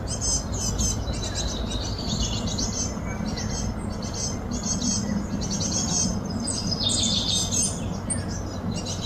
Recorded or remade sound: recorded